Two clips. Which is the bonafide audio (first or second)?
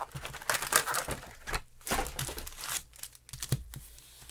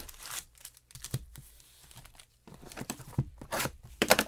first